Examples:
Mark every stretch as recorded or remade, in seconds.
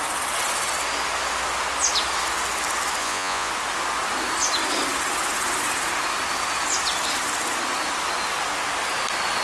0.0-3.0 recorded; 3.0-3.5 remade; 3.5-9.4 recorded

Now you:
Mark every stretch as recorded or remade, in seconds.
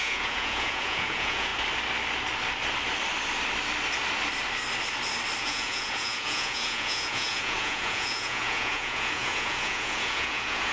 0.0-1.5 remade; 1.5-5.4 recorded; 5.4-10.7 remade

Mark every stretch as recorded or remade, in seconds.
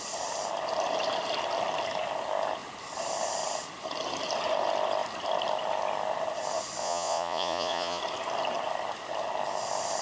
0.0-6.8 recorded; 6.8-8.0 remade; 8.0-10.0 recorded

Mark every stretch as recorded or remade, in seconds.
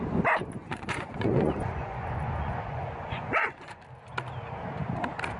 0.0-0.6 recorded; 0.6-3.8 remade; 3.8-5.4 recorded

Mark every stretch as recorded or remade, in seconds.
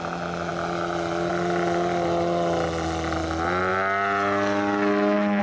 0.0-5.4 recorded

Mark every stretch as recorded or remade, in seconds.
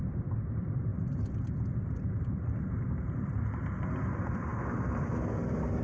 0.0-5.8 recorded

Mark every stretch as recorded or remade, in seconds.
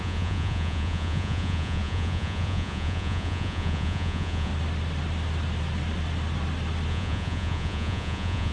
0.0-4.5 remade; 4.5-6.9 recorded; 6.9-8.5 remade